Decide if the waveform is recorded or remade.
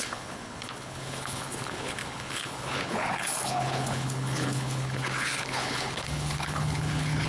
remade